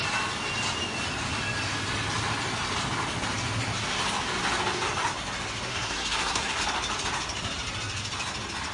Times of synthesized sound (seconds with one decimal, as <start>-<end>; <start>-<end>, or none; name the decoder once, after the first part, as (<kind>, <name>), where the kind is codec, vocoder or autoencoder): 5.7-6.6 (codec, SNAC)